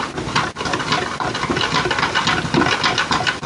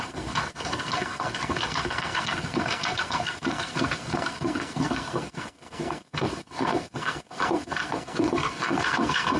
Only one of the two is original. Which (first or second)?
first